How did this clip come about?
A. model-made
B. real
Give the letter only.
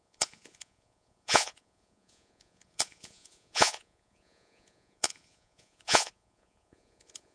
A